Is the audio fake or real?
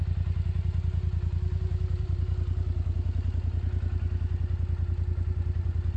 real